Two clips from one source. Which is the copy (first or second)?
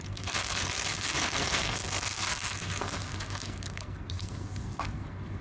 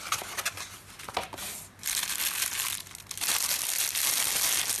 first